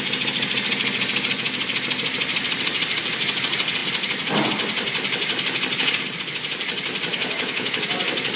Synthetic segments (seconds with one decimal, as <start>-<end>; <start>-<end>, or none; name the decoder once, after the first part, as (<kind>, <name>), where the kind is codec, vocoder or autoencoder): 7.1-7.8 (autoencoder, DAC-VAE)

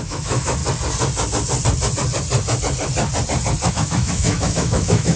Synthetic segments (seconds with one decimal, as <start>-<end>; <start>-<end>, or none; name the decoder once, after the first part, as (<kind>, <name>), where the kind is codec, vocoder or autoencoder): 0.0-0.6 (autoencoder, DAC-VAE); 3.7-5.2